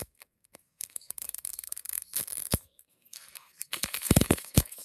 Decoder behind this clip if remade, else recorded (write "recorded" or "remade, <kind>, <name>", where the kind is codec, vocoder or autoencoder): remade, codec, SNAC